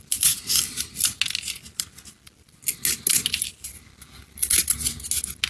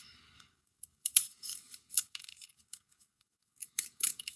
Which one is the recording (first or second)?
first